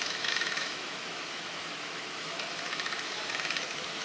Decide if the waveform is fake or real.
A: fake